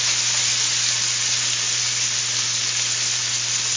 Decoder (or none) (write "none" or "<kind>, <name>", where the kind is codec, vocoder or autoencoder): none